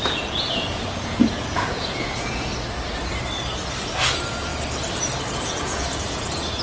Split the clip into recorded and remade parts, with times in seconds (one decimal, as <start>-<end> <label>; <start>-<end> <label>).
0.0-2.5 remade; 2.5-4.1 recorded; 4.1-4.5 remade; 4.5-5.3 recorded; 5.3-6.6 remade